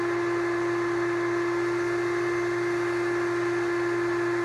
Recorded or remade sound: recorded